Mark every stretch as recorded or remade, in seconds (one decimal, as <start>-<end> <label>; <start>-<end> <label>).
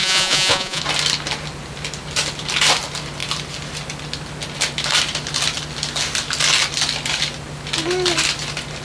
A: 0.0-0.8 remade; 0.8-8.8 recorded